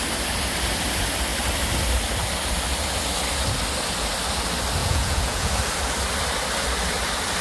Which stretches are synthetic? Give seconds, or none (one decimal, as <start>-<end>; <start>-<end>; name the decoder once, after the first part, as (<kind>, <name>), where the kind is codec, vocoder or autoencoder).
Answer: 4.8-5.5 (vocoder, Vocos)

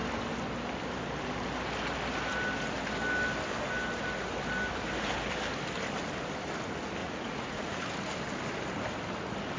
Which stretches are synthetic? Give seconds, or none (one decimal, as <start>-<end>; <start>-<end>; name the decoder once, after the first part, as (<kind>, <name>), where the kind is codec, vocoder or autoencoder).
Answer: 7.0-7.9 (vocoder, Vocos)

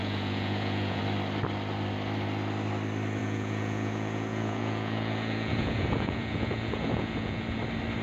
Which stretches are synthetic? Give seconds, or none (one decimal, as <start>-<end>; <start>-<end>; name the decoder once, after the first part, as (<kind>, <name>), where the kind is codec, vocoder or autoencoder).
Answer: 0.0-1.0 (vocoder, Vocos); 3.2-7.6

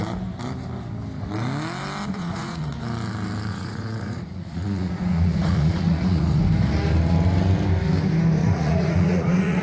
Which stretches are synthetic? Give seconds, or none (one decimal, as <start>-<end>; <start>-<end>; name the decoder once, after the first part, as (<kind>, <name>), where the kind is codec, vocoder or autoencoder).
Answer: 2.1-2.6 (vocoder, Vocos); 3.5-6.4; 8.4-9.6

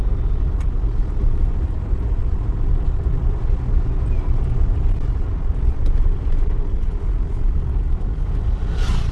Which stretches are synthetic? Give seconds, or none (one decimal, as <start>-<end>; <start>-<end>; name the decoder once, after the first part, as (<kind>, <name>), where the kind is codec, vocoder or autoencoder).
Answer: none

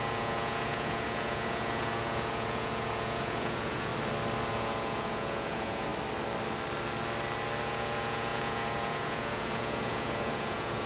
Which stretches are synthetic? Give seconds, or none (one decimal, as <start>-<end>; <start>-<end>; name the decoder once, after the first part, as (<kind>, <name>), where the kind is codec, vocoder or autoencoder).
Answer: 0.0-3.9 (vocoder, Vocos); 4.5-5.9; 7.6-10.9

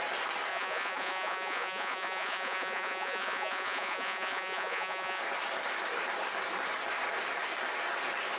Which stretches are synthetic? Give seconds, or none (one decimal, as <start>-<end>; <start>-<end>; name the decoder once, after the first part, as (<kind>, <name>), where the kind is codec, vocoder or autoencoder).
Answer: 0.5-5.2 (vocoder, Vocos)